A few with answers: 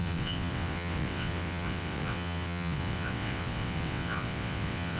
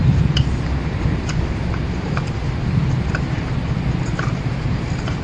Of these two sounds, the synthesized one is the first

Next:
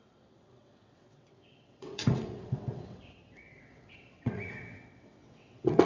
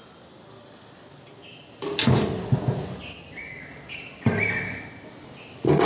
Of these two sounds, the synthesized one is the first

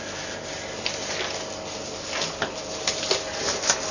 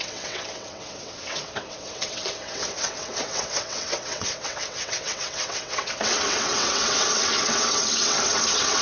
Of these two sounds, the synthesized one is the second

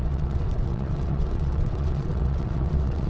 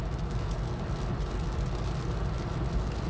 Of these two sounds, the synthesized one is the first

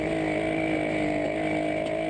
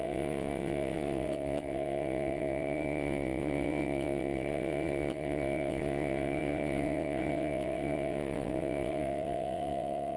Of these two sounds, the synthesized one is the second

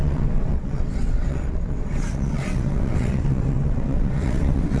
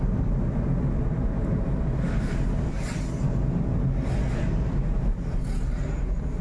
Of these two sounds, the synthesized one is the first